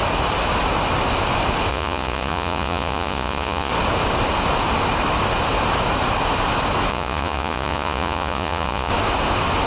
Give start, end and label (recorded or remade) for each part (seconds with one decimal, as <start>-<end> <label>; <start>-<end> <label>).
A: 0.0-1.7 recorded; 1.7-3.7 remade; 3.7-6.9 recorded; 6.9-8.9 remade; 8.9-9.7 recorded